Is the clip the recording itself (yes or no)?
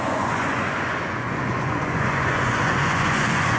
no